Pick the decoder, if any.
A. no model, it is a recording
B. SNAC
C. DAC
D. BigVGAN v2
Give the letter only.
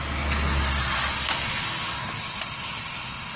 A